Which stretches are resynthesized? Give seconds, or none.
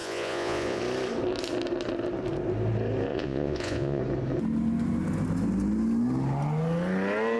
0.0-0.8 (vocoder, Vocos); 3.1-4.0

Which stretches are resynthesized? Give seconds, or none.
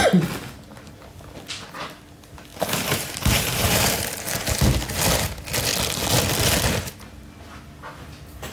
2.5-4.6 (vocoder, BigVGAN v2)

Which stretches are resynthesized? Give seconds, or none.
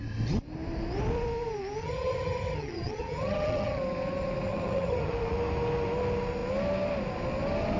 1.8-3.8 (vocoder, HiFi-GAN); 4.5-5.1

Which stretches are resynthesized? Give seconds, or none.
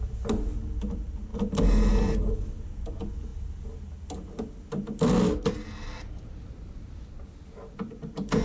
none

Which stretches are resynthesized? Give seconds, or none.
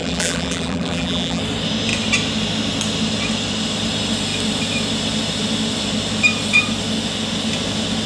0.0-1.4 (vocoder, BigVGAN v2)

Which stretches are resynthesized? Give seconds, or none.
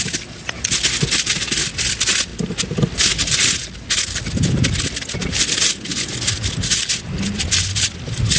none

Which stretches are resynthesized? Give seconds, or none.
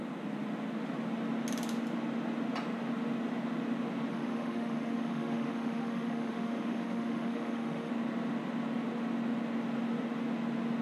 4.1-7.9 (autoencoder, DAC-VAE)